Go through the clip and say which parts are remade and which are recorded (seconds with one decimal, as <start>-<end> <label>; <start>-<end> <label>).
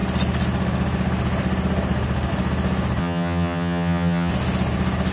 0.0-3.0 recorded; 3.0-4.3 remade; 4.3-5.1 recorded